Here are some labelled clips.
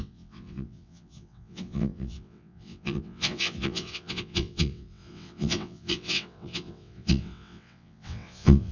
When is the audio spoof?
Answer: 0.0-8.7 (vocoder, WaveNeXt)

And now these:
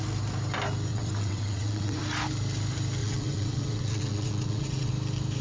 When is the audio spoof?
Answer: 0.9-2.0 (vocoder, WaveNeXt); 3.0-4.9

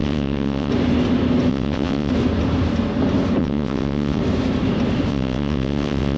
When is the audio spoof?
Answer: 0.0-0.7 (vocoder, WaveNeXt); 1.5-2.1; 3.4-4.2; 5.1-6.2

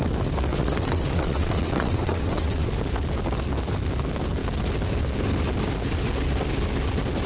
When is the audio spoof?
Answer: 0.5-2.7 (vocoder, WaveNeXt)

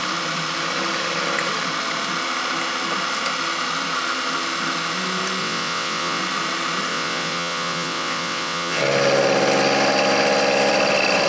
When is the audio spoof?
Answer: 5.4-6.2 (vocoder, WaveNeXt); 6.9-8.8